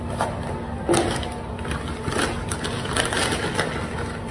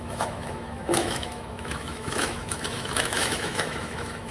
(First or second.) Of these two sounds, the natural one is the first